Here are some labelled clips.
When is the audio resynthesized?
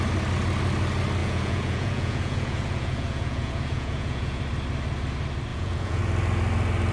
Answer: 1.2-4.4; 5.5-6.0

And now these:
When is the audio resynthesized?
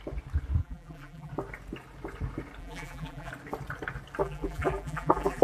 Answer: 0.6-1.3; 2.6-3.3; 4.2-5.4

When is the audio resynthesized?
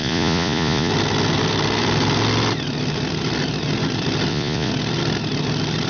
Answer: 0.0-0.9; 4.3-4.7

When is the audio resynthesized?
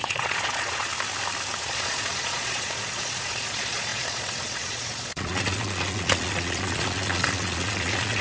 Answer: 0.0-0.9; 1.6-8.2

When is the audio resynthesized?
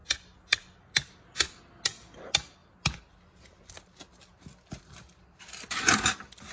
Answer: none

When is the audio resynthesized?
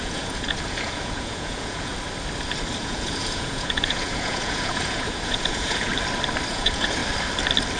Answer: 0.0-1.9; 2.8-5.9; 6.5-7.0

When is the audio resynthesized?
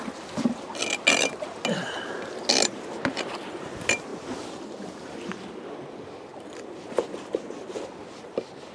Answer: none